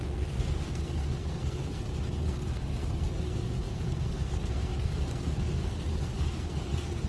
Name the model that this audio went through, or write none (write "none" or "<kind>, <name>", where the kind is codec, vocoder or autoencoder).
codec, SNAC